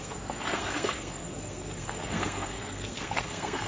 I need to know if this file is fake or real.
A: fake